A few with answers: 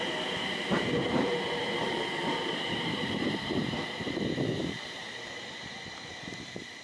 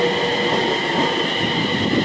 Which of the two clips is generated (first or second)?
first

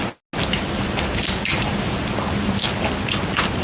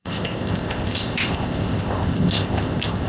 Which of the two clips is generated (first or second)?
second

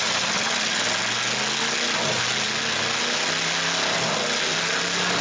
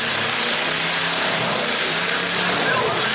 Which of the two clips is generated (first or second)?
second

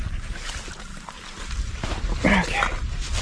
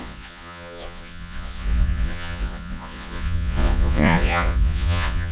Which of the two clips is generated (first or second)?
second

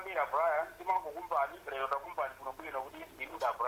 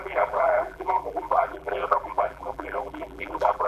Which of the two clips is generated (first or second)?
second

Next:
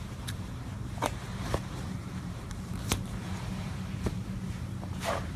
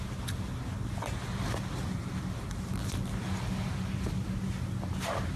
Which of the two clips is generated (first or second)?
first